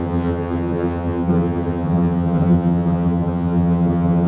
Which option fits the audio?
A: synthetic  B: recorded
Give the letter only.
A